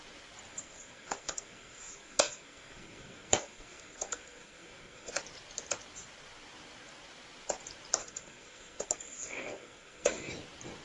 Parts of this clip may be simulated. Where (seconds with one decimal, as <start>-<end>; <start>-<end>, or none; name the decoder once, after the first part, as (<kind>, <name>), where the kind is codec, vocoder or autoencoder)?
0.5-5.1 (codec, SNAC); 8.0-10.3